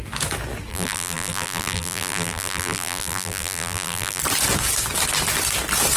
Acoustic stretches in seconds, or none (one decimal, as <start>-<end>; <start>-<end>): 0.0-0.7; 4.2-6.0